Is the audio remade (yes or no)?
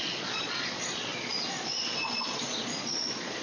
yes